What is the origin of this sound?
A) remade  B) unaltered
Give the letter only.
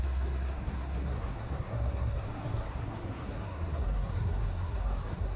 A